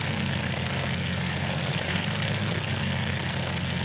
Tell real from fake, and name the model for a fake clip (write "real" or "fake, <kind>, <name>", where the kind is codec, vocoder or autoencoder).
fake, codec, SNAC